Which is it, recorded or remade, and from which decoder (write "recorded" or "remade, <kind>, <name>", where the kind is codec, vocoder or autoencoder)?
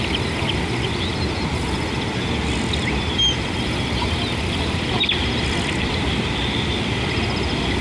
recorded